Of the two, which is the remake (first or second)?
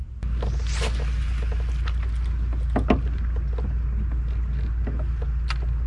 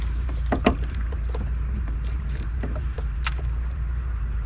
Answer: second